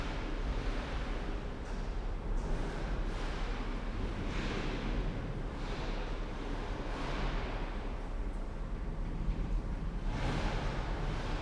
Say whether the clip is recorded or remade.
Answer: remade